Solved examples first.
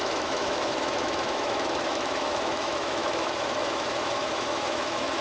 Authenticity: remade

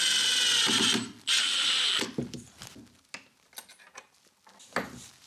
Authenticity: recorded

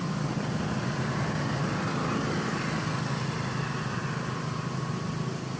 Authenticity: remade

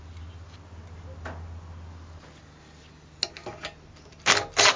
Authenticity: recorded